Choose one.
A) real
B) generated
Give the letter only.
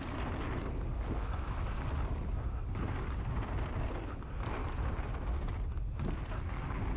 A